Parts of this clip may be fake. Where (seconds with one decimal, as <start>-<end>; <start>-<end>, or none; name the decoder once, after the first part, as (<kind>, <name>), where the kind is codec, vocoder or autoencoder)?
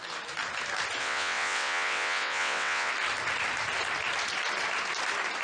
1.0-2.9 (vocoder, WaveNeXt)